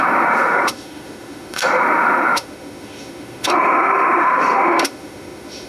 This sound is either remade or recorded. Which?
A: remade